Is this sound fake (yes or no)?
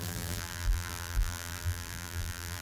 yes